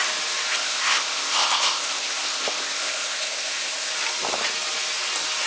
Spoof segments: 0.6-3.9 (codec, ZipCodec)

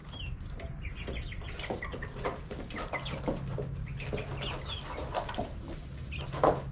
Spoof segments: none

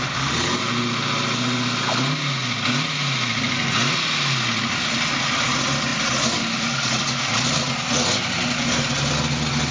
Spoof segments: none

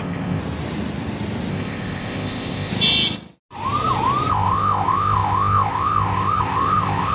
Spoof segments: 0.0-0.4 (codec, ZipCodec); 1.5-2.7; 4.3-7.1